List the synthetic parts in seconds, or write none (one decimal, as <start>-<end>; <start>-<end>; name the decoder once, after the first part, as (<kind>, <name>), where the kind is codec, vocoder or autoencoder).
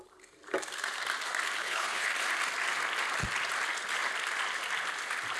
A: 1.6-2.1 (codec, HILCodec)